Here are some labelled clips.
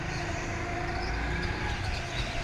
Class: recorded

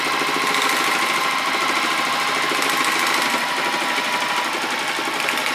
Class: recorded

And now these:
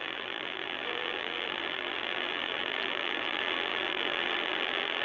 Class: remade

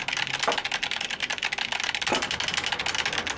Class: recorded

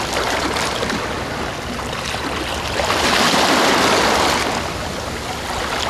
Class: recorded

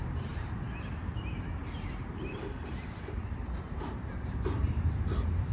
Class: remade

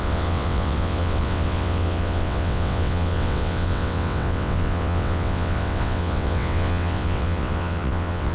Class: remade